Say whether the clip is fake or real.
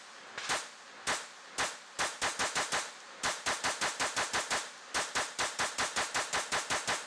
real